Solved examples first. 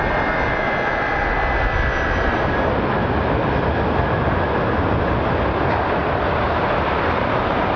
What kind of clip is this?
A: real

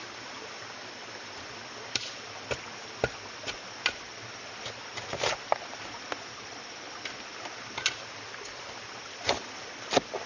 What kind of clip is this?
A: real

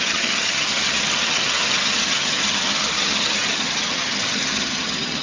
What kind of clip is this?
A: fake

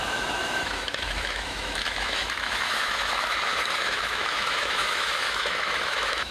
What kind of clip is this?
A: fake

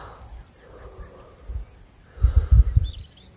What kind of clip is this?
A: real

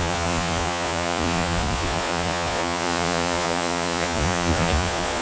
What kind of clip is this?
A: fake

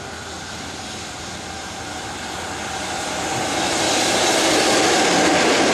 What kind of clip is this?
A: real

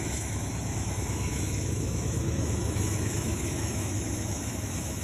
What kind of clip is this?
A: fake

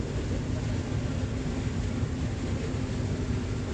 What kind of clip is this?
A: real